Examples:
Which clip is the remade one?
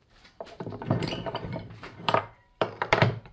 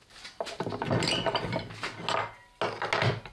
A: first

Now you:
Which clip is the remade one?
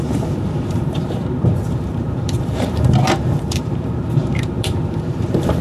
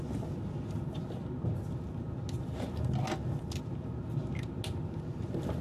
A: first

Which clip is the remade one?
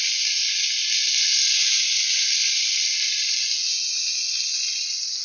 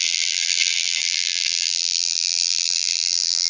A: second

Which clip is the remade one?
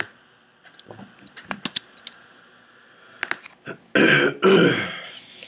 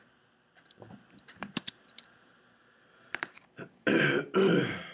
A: second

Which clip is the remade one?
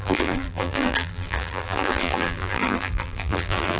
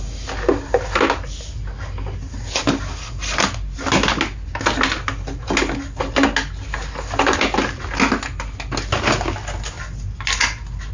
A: first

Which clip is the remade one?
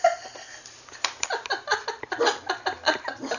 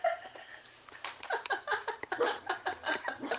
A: second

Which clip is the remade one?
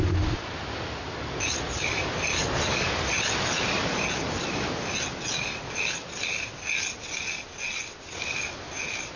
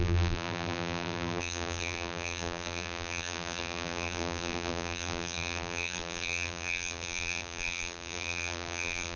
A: second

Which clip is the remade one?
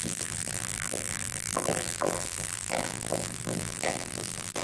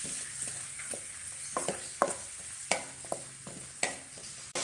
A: first